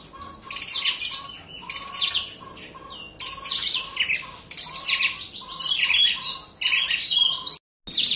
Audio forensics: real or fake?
real